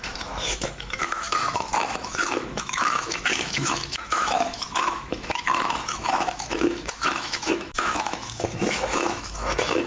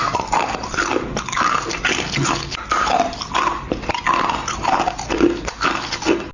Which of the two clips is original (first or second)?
second